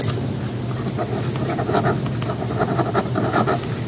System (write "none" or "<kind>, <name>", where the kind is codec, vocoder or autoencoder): none